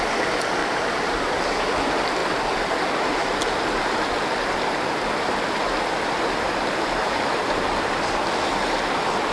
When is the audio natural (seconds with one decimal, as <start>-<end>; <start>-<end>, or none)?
0.0-0.6; 1.2-7.0; 8.0-9.3